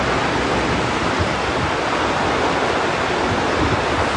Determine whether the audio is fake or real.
real